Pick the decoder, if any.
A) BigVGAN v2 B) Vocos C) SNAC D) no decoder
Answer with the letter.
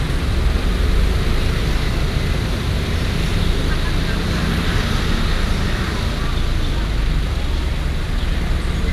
D